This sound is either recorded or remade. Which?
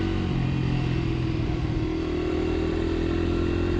recorded